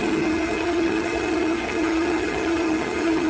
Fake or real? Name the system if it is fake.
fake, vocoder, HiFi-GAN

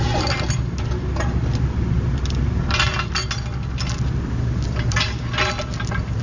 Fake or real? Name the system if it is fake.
real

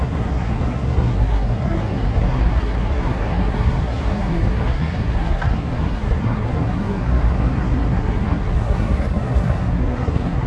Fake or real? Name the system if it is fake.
fake, codec, SNAC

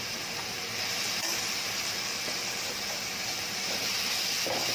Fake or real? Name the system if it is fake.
fake, vocoder, BigVGAN v2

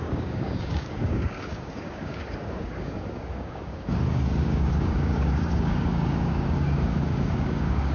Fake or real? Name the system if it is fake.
fake, codec, DAC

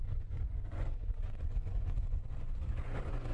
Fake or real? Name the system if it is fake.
fake, vocoder, Vocos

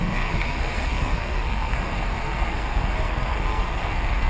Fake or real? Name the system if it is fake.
fake, codec, SNAC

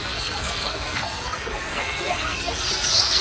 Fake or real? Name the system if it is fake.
fake, codec, SNAC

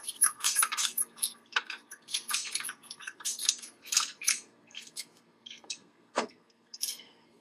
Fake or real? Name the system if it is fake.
fake, codec, SNAC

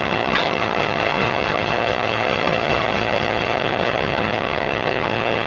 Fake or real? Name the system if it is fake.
fake, vocoder, HiFi-GAN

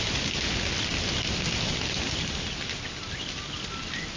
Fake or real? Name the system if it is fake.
real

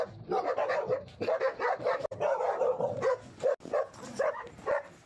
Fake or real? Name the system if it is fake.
real